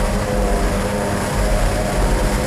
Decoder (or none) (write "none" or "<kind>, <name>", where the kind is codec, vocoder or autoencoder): vocoder, BigVGAN v2